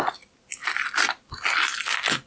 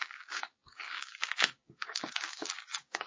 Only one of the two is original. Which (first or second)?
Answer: first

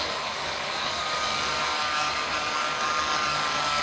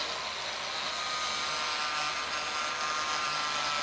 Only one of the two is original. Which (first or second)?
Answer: second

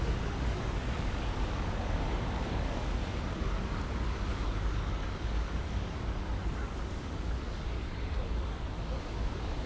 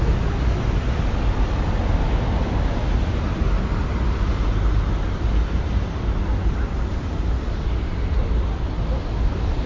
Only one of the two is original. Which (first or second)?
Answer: second